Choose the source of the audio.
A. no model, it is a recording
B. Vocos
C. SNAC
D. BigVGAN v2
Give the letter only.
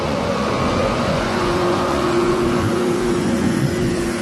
B